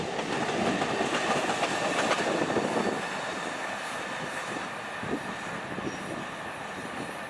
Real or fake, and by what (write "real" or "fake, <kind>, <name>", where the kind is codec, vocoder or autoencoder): real